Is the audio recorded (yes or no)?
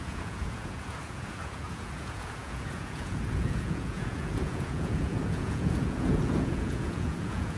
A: no